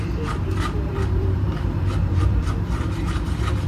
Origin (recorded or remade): remade